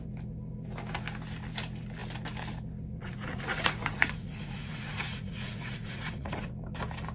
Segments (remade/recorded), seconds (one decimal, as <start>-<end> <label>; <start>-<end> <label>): 0.0-3.0 recorded; 3.0-6.5 remade; 6.5-7.1 recorded